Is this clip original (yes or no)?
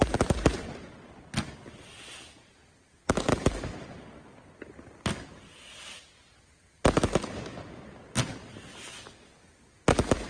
yes